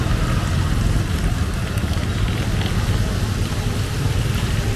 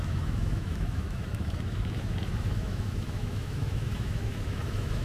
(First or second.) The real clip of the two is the first